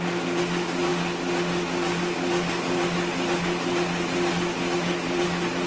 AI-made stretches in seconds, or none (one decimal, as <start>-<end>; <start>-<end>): none

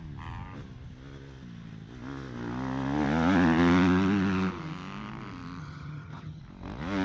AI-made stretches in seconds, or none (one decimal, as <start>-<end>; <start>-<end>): 5.6-6.4

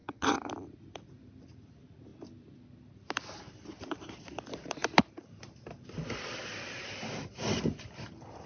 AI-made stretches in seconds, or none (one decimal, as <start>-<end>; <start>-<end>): 0.0-0.5

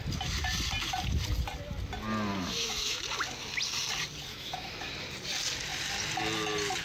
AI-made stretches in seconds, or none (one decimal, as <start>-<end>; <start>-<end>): 2.3-3.0; 4.3-4.9